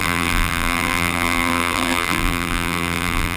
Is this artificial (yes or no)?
yes